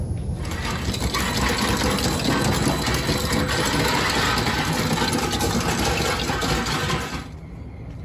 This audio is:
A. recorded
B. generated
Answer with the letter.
A